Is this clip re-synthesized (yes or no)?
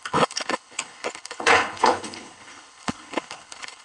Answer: yes